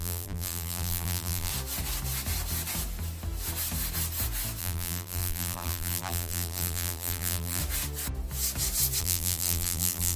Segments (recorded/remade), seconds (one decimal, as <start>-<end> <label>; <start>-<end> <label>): 0.0-1.5 remade; 1.5-4.6 recorded; 4.6-7.6 remade; 7.6-9.0 recorded; 9.0-10.2 remade